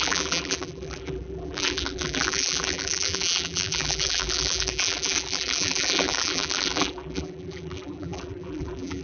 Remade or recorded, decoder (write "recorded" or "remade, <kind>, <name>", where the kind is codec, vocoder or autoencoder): remade, vocoder, BigVGAN v2